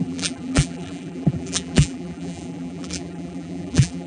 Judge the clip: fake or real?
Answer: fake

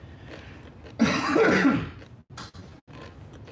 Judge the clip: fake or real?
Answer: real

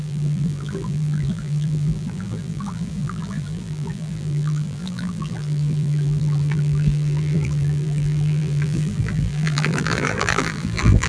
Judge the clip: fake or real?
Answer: fake